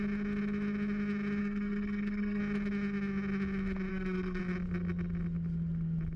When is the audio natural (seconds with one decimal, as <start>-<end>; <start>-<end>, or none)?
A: 0.0-1.4; 2.4-3.9; 4.4-6.2